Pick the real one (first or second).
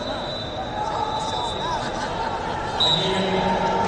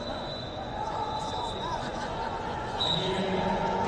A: first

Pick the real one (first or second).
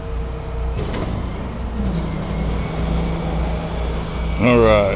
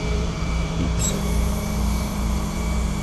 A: first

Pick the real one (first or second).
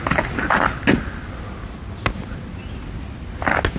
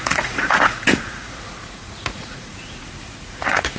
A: first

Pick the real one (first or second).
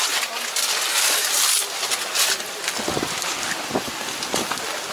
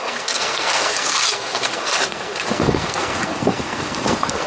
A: first